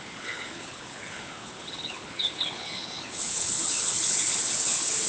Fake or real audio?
fake